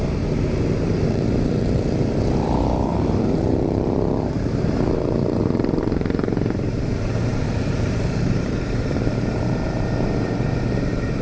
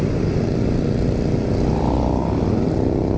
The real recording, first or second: second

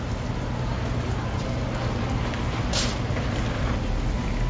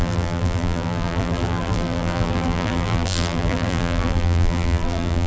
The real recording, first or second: first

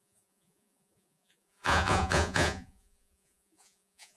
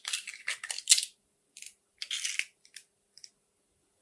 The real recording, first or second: second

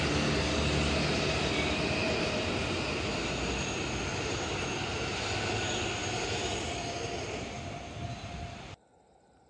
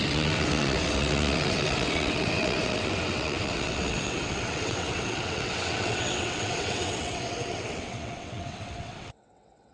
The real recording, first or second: first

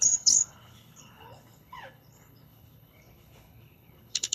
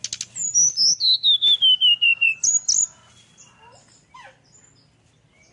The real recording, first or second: second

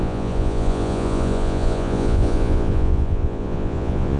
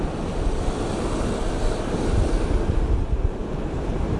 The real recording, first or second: second